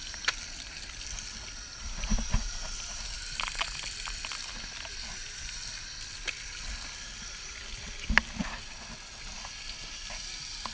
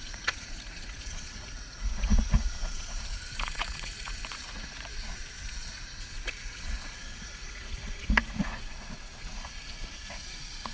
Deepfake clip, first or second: second